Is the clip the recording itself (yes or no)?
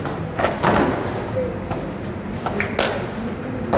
yes